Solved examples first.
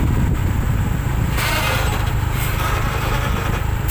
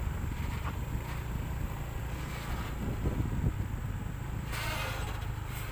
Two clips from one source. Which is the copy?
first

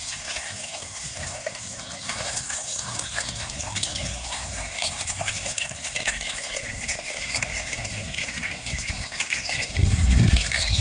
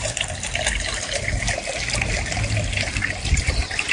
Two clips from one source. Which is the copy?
first